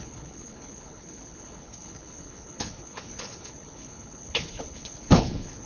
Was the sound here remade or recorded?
remade